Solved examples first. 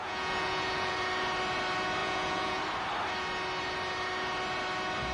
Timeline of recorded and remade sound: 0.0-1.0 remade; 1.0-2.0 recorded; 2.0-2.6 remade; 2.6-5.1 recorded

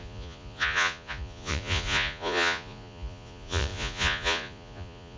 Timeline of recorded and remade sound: 0.0-5.2 remade

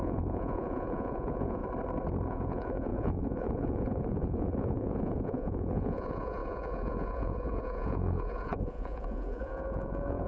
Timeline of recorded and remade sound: 0.0-1.6 remade; 1.6-2.3 recorded; 2.3-10.3 remade